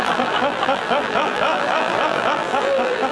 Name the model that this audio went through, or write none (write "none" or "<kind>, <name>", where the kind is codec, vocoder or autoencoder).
vocoder, BigVGAN v2